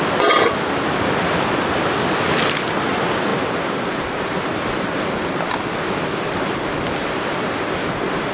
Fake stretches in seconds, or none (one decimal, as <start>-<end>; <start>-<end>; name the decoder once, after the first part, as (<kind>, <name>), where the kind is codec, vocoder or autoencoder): none